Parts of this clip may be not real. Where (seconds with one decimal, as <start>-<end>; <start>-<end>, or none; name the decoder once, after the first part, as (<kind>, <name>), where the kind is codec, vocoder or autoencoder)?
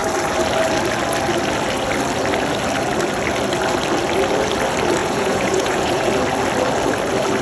5.0-6.1 (vocoder, Vocos)